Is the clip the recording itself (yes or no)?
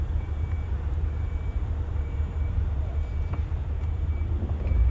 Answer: no